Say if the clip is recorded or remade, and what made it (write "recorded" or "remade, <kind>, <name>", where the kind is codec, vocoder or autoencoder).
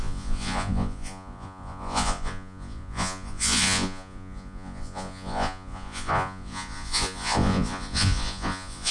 remade, vocoder, Vocos